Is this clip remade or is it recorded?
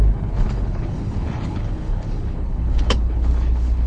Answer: remade